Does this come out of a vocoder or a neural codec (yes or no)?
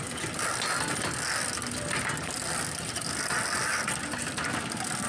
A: no